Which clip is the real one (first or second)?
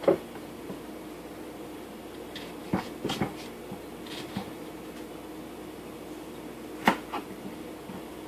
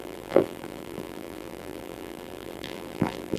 first